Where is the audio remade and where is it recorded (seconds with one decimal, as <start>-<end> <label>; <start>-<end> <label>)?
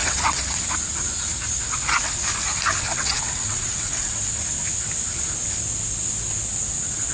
0.0-0.6 remade; 0.6-2.9 recorded; 2.9-4.1 remade; 4.1-7.1 recorded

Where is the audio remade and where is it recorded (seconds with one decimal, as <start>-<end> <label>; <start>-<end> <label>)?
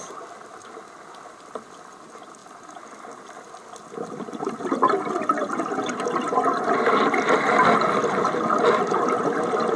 0.0-9.8 recorded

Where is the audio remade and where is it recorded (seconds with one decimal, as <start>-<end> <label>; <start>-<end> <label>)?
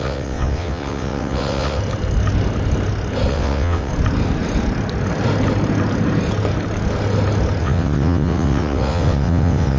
0.0-1.8 remade; 1.8-3.3 recorded; 3.3-3.9 remade; 3.9-7.6 recorded; 7.6-9.8 remade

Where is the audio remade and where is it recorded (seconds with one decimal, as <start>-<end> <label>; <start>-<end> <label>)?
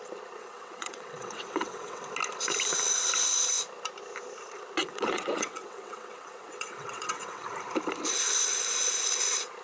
0.0-0.4 recorded; 0.4-2.0 remade; 2.0-4.8 recorded; 4.8-7.5 remade; 7.5-9.6 recorded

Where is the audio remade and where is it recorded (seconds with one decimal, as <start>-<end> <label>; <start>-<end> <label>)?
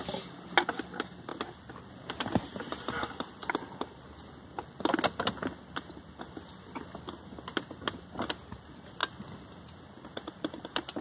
0.0-11.0 recorded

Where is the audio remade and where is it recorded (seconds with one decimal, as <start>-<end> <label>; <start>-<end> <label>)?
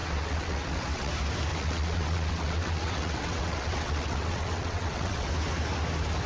0.0-1.1 remade; 1.1-1.5 recorded; 1.5-5.3 remade; 5.3-6.3 recorded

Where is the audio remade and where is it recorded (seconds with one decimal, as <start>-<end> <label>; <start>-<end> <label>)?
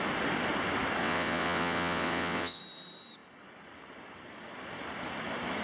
0.0-1.0 recorded; 1.0-2.6 remade; 2.6-5.6 recorded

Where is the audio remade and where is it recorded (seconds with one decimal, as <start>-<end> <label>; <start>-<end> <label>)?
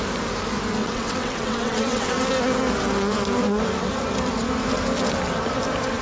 0.0-0.8 recorded; 0.8-2.2 remade; 2.2-6.0 recorded